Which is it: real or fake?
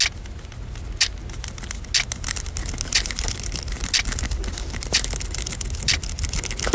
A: real